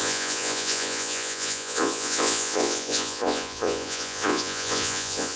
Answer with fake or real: fake